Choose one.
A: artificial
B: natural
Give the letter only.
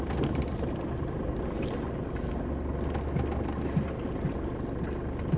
B